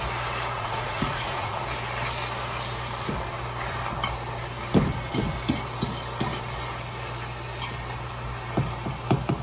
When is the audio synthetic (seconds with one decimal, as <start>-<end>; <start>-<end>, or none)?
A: 0.6-1.6